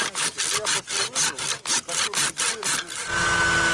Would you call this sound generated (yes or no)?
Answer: no